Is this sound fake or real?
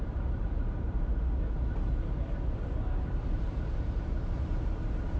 fake